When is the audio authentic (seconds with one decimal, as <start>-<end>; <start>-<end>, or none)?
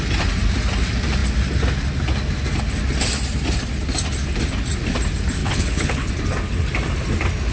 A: 0.0-5.4; 6.1-7.5